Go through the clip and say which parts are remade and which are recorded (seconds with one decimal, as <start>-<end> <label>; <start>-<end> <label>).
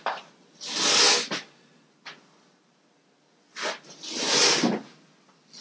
0.0-5.6 recorded